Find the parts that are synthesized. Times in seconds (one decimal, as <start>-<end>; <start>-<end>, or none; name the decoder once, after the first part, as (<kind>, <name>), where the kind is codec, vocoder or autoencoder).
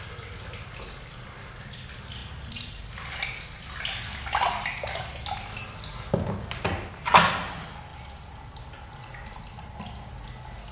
none